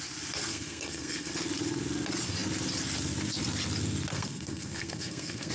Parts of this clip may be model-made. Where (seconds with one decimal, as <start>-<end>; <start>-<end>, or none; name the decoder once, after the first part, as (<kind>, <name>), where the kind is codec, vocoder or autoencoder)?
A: 0.5-1.3 (codec, SNAC); 4.1-5.5